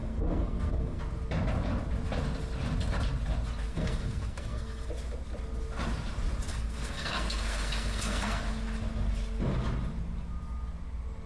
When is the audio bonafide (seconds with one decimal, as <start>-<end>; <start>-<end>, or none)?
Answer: 1.0-3.7; 4.9-6.5; 8.4-11.3